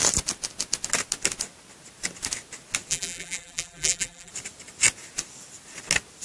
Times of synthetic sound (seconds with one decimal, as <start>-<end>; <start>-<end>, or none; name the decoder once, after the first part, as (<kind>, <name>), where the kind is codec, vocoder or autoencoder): 2.9-4.3 (vocoder, BigVGAN v2)